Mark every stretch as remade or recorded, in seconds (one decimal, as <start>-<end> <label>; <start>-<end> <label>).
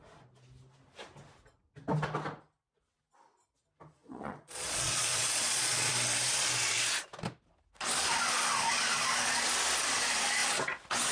0.0-4.0 recorded; 4.0-5.9 remade; 5.9-11.1 recorded